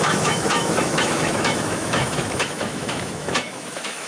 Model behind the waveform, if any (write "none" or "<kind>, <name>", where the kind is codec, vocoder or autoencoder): autoencoder, DAC-VAE